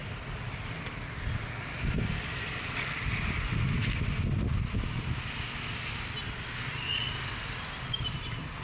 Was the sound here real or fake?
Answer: real